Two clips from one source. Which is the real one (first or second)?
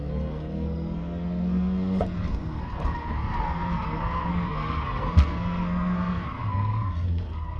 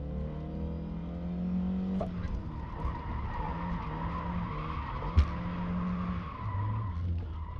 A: second